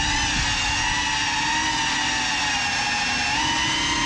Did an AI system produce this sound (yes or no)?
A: no